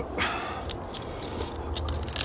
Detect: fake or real real